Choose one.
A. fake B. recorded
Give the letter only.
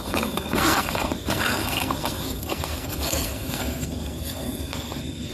A